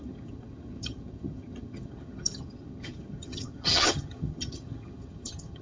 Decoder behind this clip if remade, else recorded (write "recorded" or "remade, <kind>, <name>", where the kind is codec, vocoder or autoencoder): remade, vocoder, HiFi-GAN